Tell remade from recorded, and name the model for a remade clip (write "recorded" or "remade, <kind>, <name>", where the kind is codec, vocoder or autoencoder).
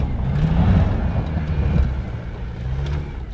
recorded